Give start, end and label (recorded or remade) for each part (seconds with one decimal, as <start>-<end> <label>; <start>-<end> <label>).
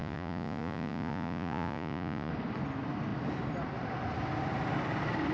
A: 0.0-2.3 remade; 2.3-5.3 recorded